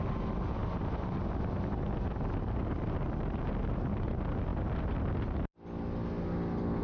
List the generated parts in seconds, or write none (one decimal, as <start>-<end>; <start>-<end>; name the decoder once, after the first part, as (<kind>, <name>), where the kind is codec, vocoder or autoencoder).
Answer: none